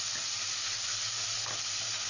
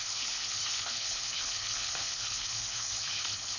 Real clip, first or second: first